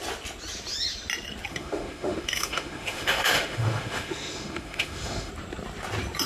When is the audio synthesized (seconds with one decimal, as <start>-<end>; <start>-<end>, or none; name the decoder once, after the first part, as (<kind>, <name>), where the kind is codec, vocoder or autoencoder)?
1.5-5.3 (autoencoder, DAC-VAE)